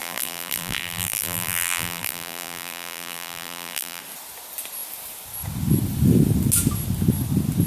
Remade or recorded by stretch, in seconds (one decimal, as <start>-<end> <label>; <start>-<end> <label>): 0.0-4.0 remade; 4.0-7.7 recorded